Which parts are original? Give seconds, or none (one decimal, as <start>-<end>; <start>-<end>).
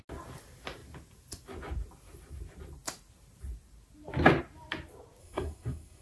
0.0-5.2